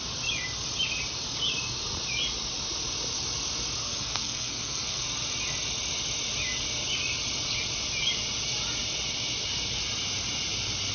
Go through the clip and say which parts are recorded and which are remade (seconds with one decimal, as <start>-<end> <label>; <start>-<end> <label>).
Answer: 0.0-3.8 recorded; 3.8-5.0 remade; 5.0-10.9 recorded